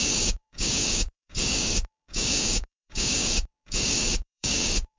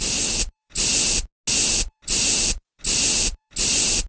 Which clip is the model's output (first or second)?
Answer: first